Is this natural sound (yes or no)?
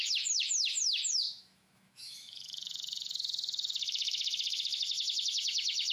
no